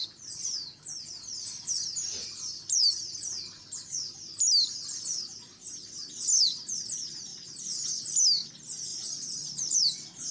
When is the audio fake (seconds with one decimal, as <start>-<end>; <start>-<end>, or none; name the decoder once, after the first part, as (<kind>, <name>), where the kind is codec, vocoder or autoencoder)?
0.0-5.0 (vocoder, BigVGAN v2); 7.3-8.0; 8.9-10.3